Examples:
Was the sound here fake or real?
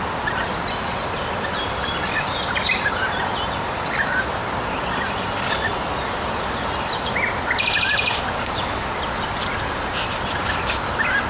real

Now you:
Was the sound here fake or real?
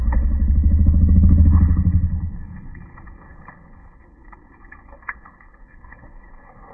fake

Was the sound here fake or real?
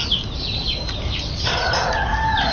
real